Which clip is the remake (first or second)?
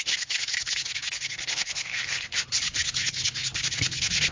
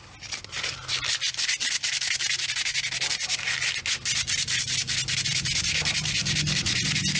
first